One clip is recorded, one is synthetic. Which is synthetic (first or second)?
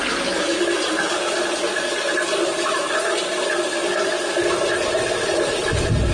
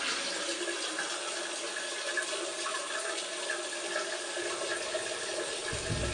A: first